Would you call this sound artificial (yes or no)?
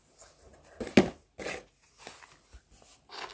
no